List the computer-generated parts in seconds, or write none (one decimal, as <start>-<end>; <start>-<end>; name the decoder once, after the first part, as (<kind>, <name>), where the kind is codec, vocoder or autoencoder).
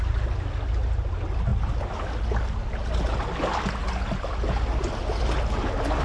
none